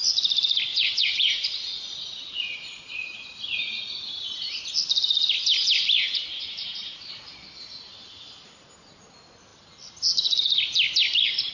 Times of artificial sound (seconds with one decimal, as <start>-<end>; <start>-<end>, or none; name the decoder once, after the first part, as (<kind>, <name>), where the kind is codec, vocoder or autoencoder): 0.7-3.8 (vocoder, Vocos); 6.3-7.1